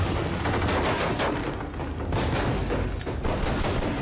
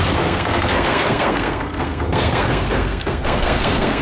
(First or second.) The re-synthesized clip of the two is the second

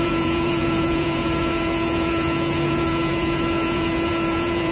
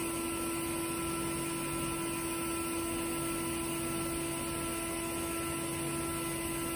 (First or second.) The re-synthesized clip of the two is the first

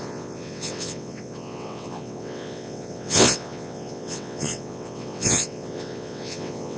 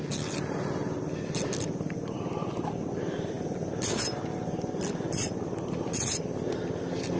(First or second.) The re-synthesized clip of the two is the first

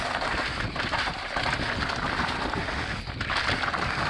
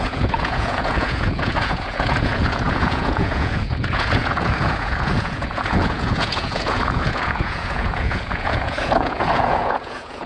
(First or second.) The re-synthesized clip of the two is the second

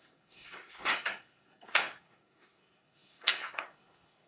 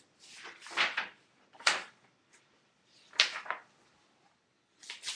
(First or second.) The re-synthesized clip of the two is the first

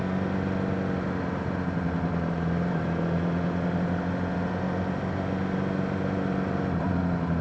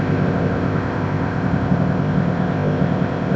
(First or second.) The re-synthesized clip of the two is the second